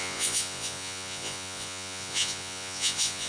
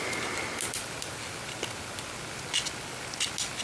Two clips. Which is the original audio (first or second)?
second